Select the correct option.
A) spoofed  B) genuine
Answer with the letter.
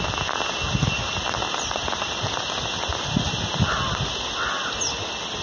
B